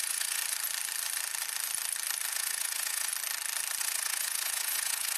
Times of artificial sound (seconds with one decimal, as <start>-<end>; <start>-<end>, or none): 0.0-0.4; 2.3-3.1; 3.8-5.2